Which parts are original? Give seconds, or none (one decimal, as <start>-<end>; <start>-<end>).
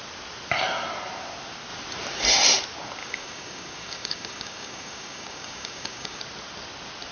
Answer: 0.0-3.0; 6.2-7.1